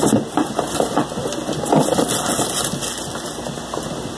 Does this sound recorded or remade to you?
recorded